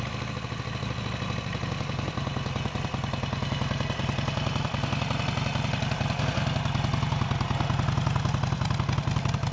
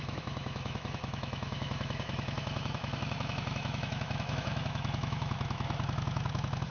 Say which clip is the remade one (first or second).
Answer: second